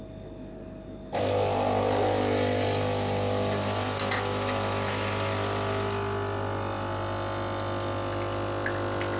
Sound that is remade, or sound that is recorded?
recorded